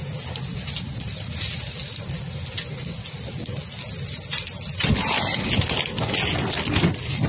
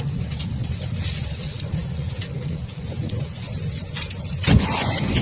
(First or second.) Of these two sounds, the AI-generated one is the second